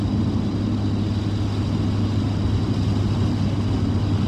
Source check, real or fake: real